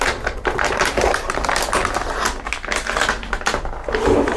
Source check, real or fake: real